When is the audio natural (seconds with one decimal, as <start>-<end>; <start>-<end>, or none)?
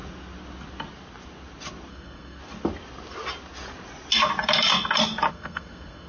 0.0-1.9; 2.4-5.3